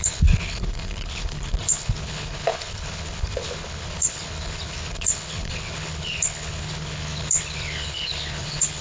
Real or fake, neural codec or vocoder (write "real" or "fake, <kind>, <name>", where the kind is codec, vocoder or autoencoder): fake, codec, HILCodec